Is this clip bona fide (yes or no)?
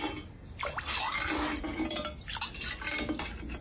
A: yes